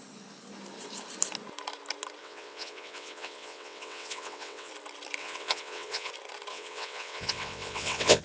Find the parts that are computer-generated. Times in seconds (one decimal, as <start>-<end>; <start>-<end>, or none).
2.2-4.7; 5.2-6.1; 6.5-8.2